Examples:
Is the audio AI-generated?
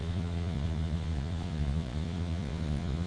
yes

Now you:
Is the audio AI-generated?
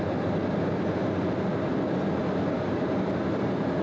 no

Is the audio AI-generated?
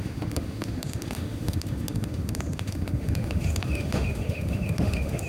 yes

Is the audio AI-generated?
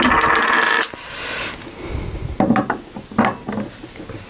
no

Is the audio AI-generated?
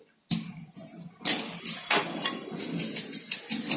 no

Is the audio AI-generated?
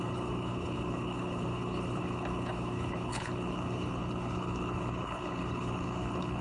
yes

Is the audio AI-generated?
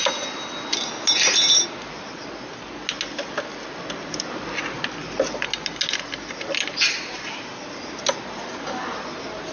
no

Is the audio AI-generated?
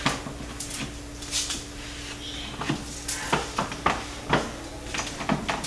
no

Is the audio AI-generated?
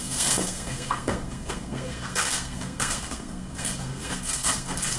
yes